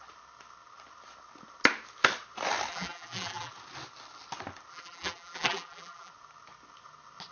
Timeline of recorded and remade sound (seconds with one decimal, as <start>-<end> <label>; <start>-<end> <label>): 0.0-2.7 recorded; 2.7-3.5 remade; 3.5-4.7 recorded; 4.7-6.1 remade; 6.1-7.3 recorded